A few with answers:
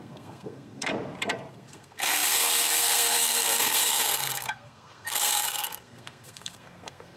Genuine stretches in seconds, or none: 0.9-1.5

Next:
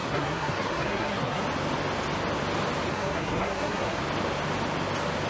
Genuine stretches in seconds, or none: 1.4-2.9; 4.0-5.3